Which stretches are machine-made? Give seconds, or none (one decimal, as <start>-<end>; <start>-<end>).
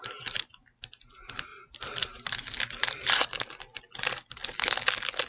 none